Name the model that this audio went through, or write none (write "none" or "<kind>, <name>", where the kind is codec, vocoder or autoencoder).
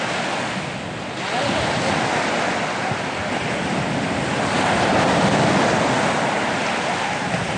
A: none